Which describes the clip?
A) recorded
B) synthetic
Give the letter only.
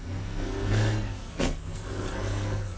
B